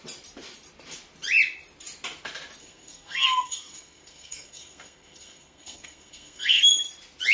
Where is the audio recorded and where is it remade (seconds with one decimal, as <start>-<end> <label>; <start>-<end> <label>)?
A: 0.0-2.6 recorded; 2.6-6.6 remade; 6.6-7.3 recorded